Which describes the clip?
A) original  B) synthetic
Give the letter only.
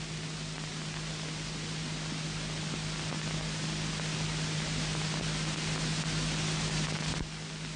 A